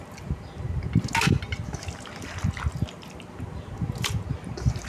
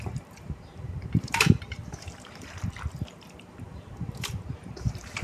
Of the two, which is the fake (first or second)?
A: second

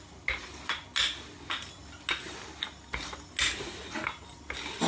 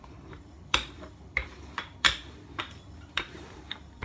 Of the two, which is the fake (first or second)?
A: second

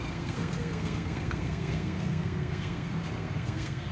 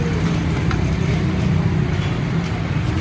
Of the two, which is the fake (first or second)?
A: first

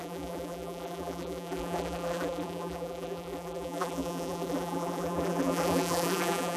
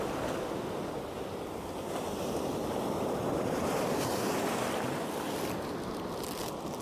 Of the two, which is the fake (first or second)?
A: first